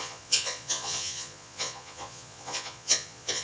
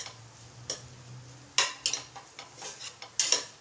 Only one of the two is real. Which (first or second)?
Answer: second